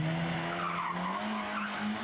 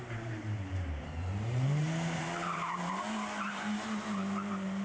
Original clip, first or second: first